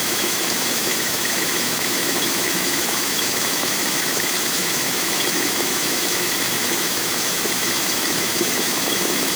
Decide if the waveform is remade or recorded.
remade